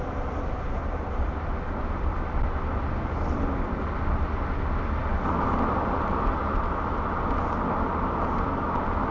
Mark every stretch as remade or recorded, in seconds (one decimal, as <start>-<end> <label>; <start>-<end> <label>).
0.0-9.1 recorded